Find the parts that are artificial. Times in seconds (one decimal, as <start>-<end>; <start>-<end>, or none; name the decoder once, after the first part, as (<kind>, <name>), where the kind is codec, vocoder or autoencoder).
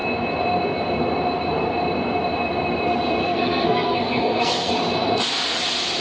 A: 3.2-4.7 (codec, SNAC)